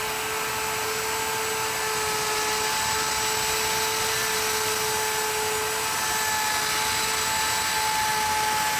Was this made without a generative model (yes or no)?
yes